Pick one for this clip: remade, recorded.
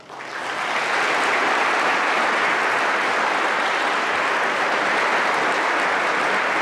recorded